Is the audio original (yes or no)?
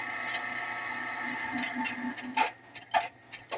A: yes